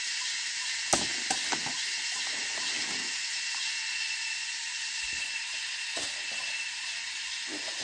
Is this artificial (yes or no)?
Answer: no